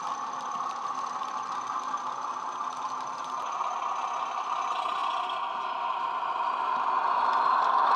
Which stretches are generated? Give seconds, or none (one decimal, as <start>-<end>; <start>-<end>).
none